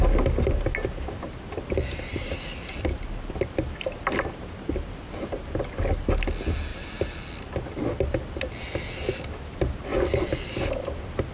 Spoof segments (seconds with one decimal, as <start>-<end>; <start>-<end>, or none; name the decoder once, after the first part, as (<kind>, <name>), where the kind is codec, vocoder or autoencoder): 2.1-5.8 (vocoder, BigVGAN v2); 6.7-7.4; 9.9-10.5